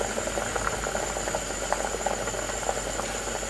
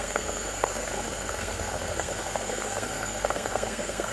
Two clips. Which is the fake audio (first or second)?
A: second